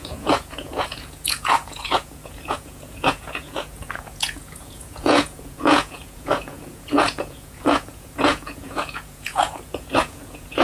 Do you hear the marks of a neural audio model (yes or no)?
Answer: yes